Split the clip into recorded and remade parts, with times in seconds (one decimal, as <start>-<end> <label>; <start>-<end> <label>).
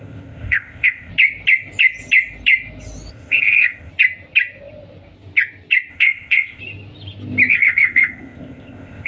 0.0-1.1 remade; 1.1-3.1 recorded; 3.1-3.9 remade; 3.9-5.9 recorded; 5.9-6.6 remade; 6.6-7.5 recorded; 7.5-9.1 remade